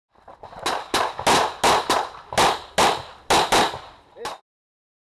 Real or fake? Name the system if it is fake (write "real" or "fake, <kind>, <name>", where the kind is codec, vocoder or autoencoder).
real